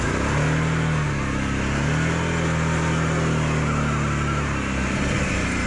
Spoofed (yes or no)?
no